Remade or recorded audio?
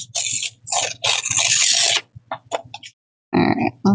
recorded